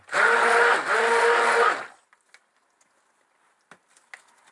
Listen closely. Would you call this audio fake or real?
real